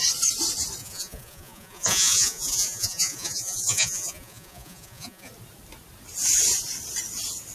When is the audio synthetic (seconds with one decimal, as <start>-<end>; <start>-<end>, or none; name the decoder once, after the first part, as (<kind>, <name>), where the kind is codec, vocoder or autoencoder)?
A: 0.8-5.3 (vocoder, Vocos)